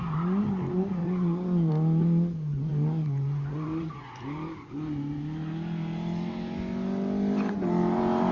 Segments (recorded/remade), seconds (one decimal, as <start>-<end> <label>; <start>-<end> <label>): 0.0-1.0 recorded; 1.0-1.7 remade; 1.7-2.7 recorded; 2.7-4.2 remade; 4.2-8.3 recorded